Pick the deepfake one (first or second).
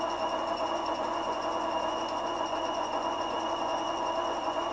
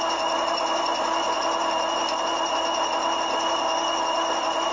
first